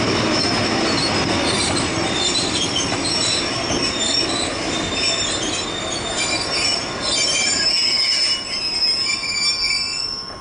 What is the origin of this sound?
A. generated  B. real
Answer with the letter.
B